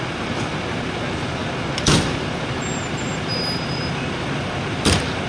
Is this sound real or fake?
real